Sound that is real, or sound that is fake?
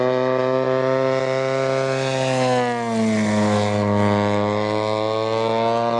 real